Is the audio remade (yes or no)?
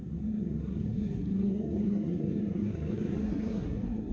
yes